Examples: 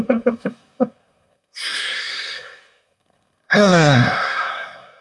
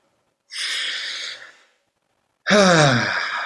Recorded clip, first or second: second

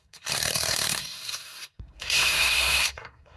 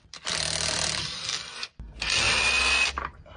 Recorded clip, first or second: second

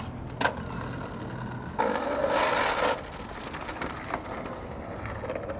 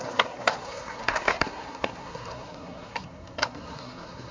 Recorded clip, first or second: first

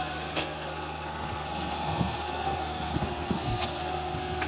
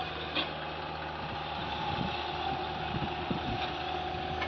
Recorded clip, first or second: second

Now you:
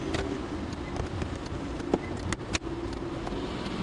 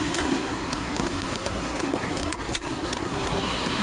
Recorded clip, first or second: first